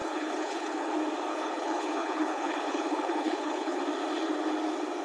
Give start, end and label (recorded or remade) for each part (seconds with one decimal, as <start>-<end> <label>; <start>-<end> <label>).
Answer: 0.0-0.9 remade; 0.9-1.3 recorded; 1.3-3.8 remade; 3.8-5.0 recorded